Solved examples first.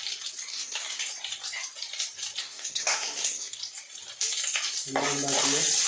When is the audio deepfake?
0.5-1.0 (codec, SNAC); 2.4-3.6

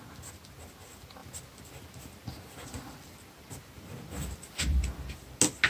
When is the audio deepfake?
none